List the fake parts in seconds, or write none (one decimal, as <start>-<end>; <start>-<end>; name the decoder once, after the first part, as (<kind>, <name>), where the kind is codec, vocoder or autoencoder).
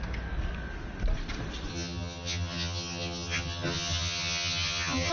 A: 1.7-5.1 (vocoder, HiFi-GAN)